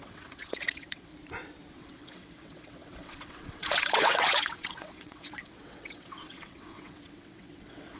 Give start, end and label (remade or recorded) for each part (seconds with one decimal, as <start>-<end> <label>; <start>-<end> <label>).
0.0-1.1 remade; 1.1-1.7 recorded; 1.7-8.0 remade